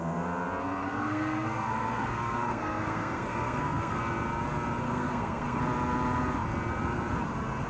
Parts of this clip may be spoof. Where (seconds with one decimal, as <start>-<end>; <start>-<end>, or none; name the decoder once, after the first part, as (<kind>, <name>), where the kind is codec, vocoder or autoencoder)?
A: 0.8-4.0 (codec, SNAC); 4.8-5.6